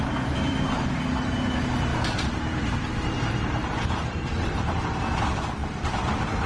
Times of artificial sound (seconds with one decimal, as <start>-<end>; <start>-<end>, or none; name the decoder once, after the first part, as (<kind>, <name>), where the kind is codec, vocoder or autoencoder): 1.9-4.8 (vocoder, BigVGAN v2); 5.6-6.5